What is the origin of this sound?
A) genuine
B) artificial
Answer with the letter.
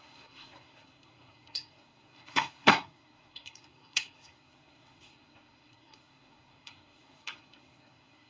B